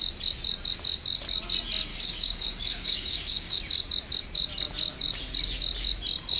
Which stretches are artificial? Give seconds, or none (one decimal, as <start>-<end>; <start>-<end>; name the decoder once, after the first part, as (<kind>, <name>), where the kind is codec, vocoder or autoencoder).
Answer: 1.9-3.6 (codec, DAC)